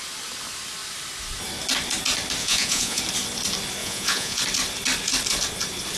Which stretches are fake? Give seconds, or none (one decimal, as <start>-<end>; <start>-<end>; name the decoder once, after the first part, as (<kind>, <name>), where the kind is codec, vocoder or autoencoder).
2.4-3.0 (vocoder, Vocos); 3.8-4.4